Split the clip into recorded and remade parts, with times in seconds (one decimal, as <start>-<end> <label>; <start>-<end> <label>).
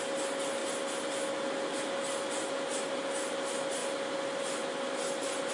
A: 0.0-5.5 recorded